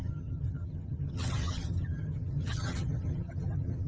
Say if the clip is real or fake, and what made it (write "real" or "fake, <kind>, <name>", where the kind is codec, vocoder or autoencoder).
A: fake, vocoder, HiFi-GAN